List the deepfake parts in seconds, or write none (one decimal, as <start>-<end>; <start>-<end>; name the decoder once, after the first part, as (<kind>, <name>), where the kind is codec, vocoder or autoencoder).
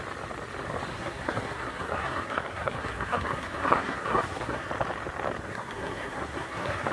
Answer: 0.9-4.7 (codec, SNAC); 5.5-6.9